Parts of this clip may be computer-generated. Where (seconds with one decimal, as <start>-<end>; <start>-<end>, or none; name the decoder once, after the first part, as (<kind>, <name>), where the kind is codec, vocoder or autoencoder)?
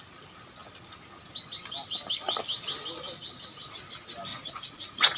4.3-5.2 (vocoder, Vocos)